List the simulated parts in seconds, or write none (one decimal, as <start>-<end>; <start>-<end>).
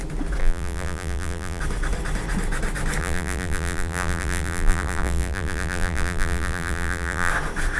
0.4-1.6; 3.0-7.3